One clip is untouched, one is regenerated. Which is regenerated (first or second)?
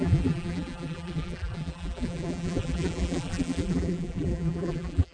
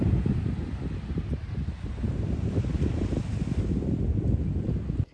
first